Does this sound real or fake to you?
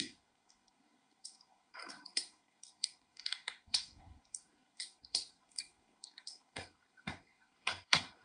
fake